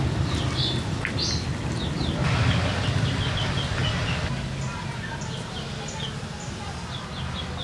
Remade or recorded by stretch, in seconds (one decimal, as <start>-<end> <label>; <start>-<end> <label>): 0.0-7.6 recorded

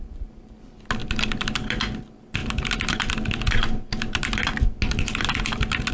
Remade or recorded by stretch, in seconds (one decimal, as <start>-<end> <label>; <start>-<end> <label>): 0.0-5.9 recorded

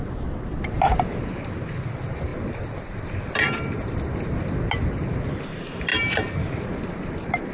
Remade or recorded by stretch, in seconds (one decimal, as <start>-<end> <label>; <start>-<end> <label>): 0.0-7.5 recorded

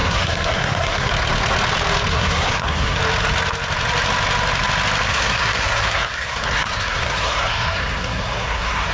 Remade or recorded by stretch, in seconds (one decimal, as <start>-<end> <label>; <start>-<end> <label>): 0.0-1.1 remade; 1.1-2.1 recorded; 2.1-3.0 remade; 3.0-5.1 recorded; 5.1-8.9 remade

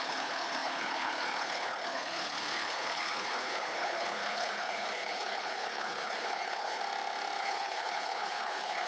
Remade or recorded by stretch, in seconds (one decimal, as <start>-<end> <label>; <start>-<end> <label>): 0.0-6.8 remade; 6.8-7.4 recorded; 7.4-8.9 remade

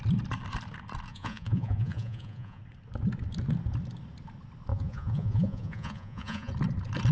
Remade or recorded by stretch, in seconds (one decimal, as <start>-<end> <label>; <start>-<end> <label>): 0.0-1.1 recorded; 1.1-2.6 remade; 2.6-4.7 recorded; 4.7-6.5 remade; 6.5-7.1 recorded

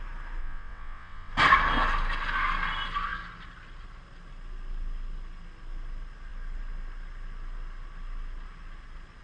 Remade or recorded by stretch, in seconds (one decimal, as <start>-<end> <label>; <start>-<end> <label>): 0.0-0.4 recorded; 0.4-1.3 remade; 1.3-9.2 recorded

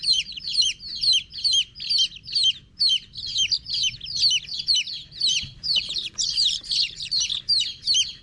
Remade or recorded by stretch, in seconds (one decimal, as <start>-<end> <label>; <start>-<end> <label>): 0.0-0.8 remade; 0.8-5.3 recorded; 5.3-7.3 remade; 7.3-8.2 recorded